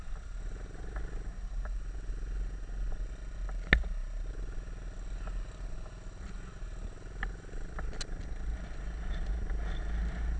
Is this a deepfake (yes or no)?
no